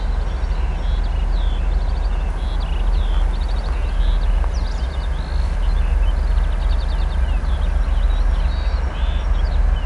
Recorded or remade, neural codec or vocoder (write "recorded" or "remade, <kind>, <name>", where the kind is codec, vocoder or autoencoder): recorded